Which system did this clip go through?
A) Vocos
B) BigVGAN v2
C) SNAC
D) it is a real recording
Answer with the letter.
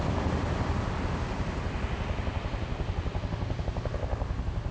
D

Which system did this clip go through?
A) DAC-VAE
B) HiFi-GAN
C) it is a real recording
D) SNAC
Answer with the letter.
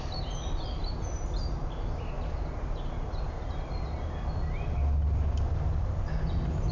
C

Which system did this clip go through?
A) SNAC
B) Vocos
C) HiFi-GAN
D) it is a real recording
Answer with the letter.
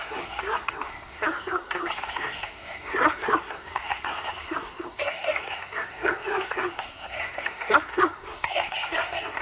A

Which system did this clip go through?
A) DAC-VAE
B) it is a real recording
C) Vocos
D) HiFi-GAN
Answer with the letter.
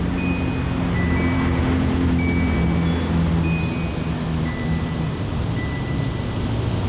B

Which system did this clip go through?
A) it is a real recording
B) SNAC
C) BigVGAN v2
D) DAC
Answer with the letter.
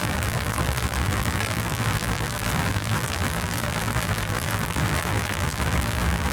C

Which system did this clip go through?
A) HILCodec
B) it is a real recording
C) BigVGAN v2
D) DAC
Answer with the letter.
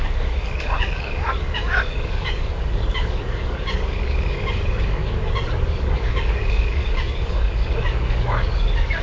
D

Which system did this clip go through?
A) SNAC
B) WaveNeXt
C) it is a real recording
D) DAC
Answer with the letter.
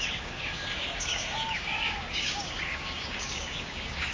D